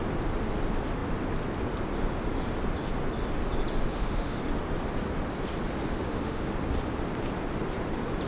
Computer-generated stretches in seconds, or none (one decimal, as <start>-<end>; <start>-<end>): 3.9-4.4; 5.8-6.5